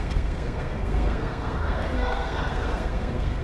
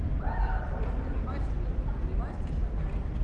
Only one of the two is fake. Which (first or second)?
first